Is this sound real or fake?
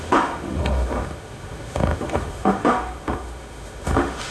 fake